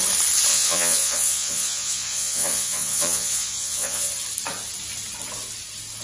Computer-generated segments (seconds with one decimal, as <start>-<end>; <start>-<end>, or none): 0.5-4.1